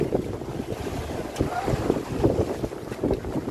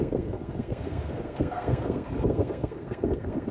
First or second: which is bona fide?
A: first